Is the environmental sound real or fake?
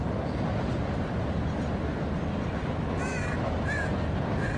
real